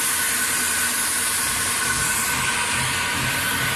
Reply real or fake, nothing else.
real